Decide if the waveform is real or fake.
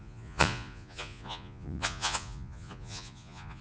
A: fake